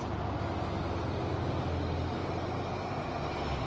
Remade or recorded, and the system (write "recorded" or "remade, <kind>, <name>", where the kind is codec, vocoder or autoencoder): recorded